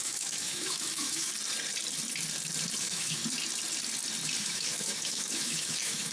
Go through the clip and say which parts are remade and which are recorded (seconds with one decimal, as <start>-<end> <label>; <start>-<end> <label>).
0.0-1.3 remade; 1.3-2.8 recorded; 2.8-3.2 remade; 3.2-4.4 recorded; 4.4-6.1 remade